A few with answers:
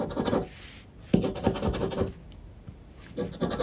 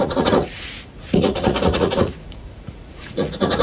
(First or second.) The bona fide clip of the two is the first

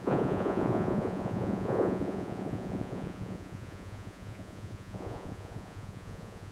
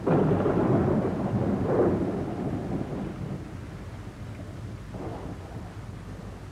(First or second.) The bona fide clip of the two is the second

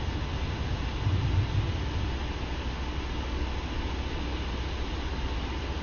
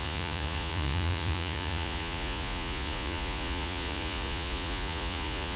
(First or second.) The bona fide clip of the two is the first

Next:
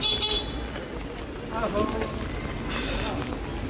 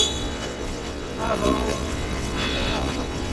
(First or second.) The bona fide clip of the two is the first